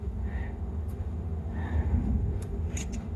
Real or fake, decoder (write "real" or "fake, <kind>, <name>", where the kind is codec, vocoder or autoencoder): fake, autoencoder, DAC-VAE